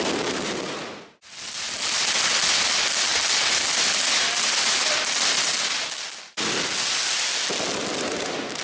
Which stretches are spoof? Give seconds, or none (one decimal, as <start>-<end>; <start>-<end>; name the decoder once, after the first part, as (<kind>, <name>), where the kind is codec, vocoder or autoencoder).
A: none